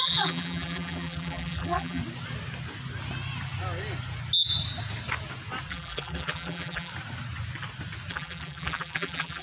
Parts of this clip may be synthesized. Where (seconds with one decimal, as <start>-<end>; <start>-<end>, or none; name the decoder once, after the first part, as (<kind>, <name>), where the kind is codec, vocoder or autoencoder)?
0.0-2.0 (vocoder, BigVGAN v2); 5.7-6.9; 8.1-9.4